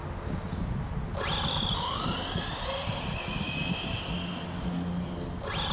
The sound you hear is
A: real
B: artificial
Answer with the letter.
A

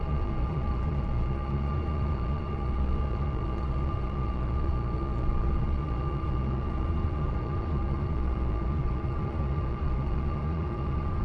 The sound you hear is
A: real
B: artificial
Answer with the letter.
B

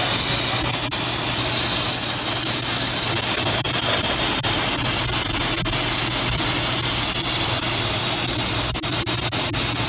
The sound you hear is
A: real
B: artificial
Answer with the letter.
A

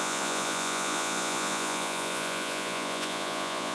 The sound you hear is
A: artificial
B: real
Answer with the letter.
A